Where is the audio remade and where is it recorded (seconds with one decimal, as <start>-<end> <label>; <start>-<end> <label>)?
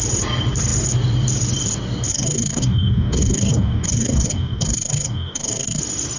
0.0-2.1 recorded; 2.1-5.8 remade; 5.8-6.2 recorded